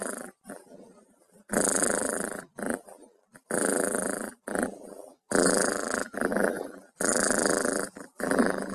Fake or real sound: fake